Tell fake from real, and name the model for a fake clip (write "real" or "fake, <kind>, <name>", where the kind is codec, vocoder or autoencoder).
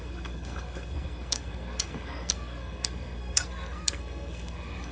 fake, codec, SNAC